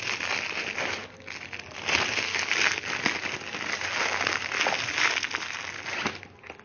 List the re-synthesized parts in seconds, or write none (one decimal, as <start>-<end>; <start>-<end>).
none